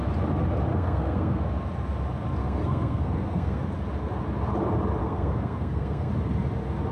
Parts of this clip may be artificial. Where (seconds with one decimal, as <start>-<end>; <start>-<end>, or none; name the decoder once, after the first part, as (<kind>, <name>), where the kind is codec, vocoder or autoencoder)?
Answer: 0.7-1.4 (codec, SNAC); 2.4-3.6; 5.0-6.1